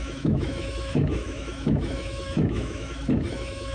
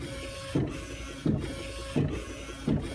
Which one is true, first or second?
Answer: second